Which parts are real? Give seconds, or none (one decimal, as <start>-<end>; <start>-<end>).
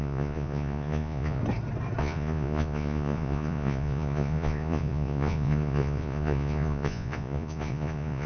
1.4-2.0